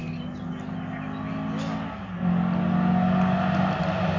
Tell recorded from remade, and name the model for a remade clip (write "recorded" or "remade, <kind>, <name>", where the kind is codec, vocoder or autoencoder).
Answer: recorded